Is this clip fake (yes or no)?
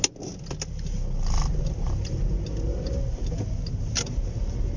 no